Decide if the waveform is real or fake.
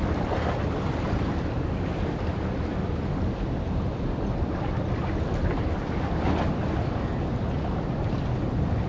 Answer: real